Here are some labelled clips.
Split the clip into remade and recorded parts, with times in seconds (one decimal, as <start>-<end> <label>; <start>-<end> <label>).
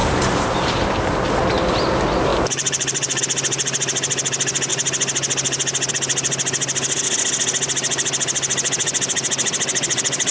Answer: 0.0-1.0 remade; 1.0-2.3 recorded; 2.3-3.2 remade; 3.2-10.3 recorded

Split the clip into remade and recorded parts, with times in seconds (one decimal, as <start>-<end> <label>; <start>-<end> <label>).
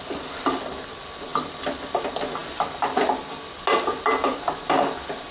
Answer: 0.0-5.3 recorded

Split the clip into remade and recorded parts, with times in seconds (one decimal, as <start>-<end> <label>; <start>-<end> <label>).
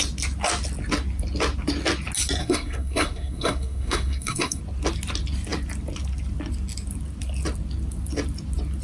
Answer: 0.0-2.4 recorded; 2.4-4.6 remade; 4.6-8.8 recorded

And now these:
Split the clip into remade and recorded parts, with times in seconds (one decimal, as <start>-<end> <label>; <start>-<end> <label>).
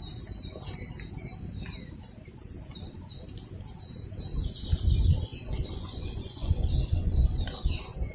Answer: 0.0-5.3 recorded; 5.3-8.1 remade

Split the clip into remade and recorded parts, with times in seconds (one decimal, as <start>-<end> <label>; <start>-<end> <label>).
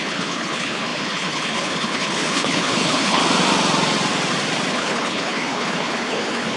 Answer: 0.0-3.2 remade; 3.2-4.7 recorded; 4.7-6.6 remade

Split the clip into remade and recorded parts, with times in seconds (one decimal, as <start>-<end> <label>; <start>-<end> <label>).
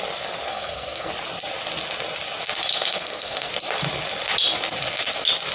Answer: 0.0-0.5 recorded; 0.5-1.1 remade; 1.1-2.7 recorded; 2.7-3.5 remade; 3.5-5.5 recorded